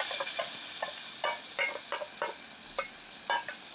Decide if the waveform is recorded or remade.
recorded